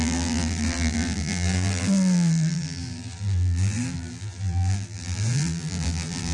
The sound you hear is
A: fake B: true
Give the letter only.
A